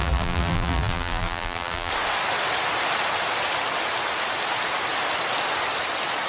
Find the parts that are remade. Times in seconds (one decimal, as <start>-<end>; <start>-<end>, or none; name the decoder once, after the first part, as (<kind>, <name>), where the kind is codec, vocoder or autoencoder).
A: 0.0-1.9 (vocoder, BigVGAN v2)